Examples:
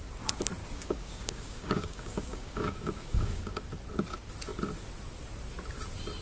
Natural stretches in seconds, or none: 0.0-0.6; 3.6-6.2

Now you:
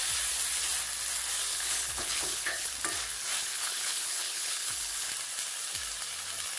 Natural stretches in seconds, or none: 0.0-1.5; 2.7-3.4; 5.1-6.6

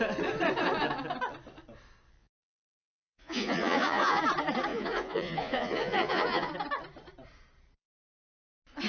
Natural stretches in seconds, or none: 0.0-2.2; 4.2-4.7; 6.5-8.9